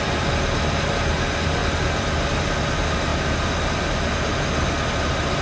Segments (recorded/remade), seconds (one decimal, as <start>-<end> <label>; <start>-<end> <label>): 0.0-3.1 recorded; 3.1-4.0 remade; 4.0-5.4 recorded